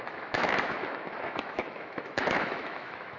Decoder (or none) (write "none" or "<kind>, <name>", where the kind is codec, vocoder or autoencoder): autoencoder, DAC-VAE